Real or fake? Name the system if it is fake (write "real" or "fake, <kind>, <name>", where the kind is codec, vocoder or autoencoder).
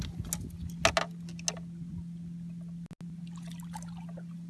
real